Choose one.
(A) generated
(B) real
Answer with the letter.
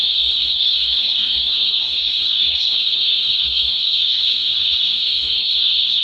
A